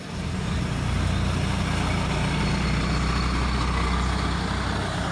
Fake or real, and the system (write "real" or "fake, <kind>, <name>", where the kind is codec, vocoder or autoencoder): real